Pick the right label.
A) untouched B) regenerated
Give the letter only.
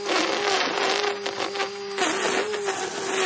A